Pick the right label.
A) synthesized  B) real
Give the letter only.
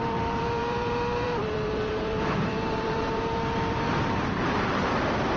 A